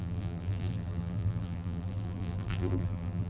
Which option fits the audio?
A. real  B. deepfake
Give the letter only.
B